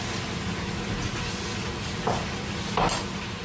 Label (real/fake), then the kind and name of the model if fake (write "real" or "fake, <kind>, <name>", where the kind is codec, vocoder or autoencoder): real